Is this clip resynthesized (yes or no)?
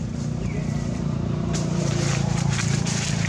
yes